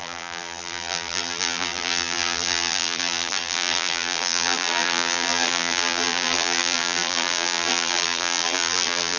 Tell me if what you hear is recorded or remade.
remade